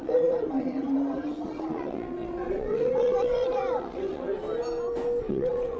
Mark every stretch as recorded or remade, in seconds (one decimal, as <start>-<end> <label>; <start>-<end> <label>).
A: 0.0-4.3 remade; 4.3-5.3 recorded; 5.3-5.8 remade